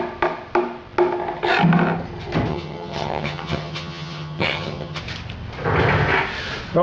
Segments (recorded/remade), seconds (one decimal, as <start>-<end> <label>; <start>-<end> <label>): 0.0-2.5 recorded; 2.5-5.0 remade; 5.0-6.8 recorded